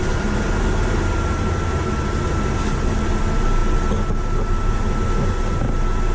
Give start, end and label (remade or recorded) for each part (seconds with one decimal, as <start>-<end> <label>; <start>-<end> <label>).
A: 0.0-6.1 recorded